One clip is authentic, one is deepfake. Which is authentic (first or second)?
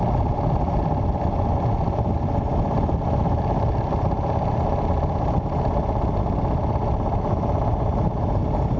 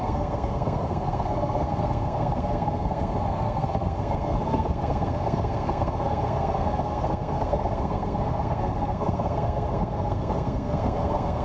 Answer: first